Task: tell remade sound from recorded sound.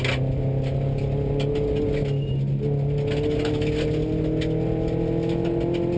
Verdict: recorded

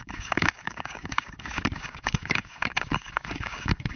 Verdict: remade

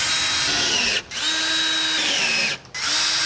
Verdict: recorded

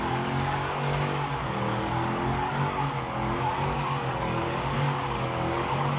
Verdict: remade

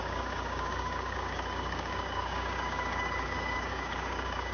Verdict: remade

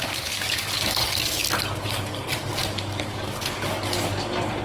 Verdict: remade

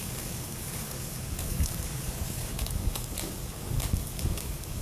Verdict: remade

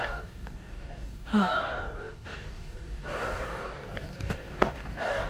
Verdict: remade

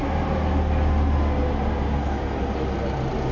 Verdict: recorded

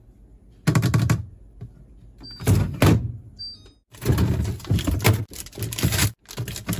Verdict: recorded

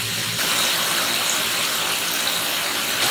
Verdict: recorded